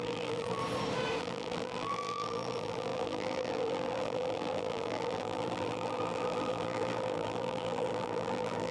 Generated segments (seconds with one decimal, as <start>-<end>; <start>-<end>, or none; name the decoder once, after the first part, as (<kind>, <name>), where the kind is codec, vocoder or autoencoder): 0.0-0.6 (vocoder, BigVGAN v2); 1.2-8.7